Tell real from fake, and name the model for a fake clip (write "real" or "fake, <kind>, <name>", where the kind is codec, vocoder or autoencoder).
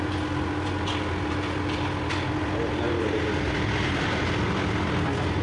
real